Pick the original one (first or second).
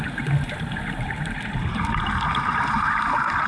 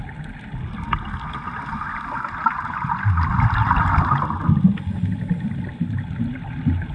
second